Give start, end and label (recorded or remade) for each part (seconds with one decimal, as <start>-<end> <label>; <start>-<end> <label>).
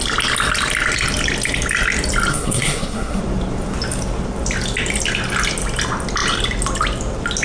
0.0-2.3 recorded; 2.3-3.2 remade; 3.2-7.4 recorded